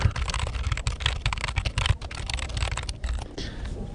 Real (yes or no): yes